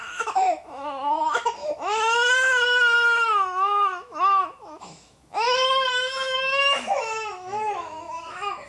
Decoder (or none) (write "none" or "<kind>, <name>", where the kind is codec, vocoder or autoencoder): autoencoder, DAC-VAE